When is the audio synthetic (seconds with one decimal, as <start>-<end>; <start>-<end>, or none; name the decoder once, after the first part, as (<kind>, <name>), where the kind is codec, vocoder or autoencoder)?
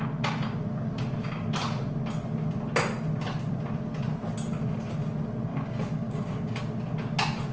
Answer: 5.5-6.6 (codec, DAC)